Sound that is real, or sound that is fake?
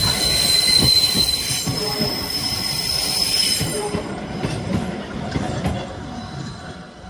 fake